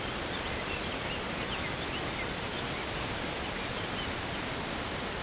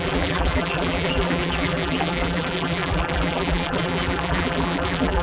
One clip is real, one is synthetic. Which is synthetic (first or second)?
second